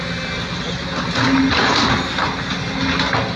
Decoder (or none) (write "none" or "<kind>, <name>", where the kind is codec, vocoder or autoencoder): none